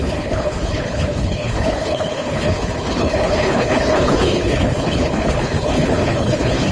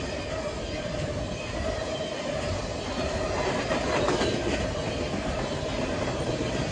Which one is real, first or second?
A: second